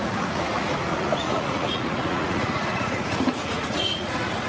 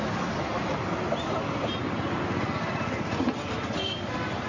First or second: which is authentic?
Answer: second